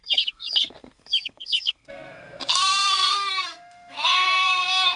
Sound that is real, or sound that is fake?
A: fake